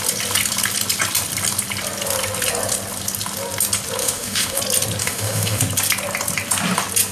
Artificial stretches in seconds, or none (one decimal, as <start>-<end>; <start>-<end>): 4.0-4.6; 5.0-5.6